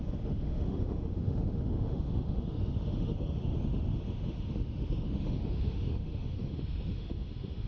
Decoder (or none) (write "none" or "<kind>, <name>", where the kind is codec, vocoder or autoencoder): autoencoder, DAC-VAE